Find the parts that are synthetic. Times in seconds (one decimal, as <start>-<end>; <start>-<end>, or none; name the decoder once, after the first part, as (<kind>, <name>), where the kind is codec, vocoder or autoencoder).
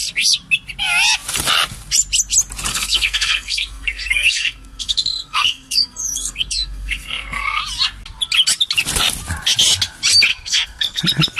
2.7-7.6 (codec, SNAC); 10.3-11.0